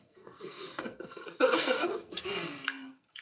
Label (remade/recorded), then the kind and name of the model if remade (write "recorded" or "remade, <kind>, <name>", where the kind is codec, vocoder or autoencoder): remade, codec, SNAC